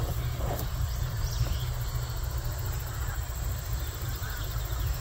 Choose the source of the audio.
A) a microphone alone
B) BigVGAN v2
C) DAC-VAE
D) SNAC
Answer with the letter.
A